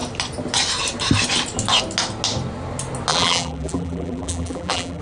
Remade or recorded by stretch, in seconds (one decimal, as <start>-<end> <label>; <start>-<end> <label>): 0.0-3.1 recorded; 3.1-5.0 remade